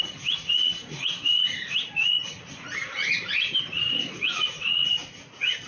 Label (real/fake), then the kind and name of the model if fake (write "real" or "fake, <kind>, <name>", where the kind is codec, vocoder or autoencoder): fake, vocoder, Vocos